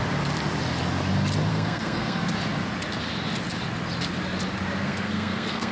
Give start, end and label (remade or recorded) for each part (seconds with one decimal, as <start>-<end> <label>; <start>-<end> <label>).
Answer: 0.0-1.5 recorded; 1.5-2.2 remade; 2.2-4.8 recorded; 4.8-5.7 remade